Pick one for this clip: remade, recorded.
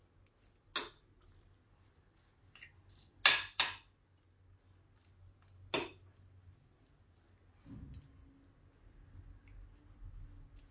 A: recorded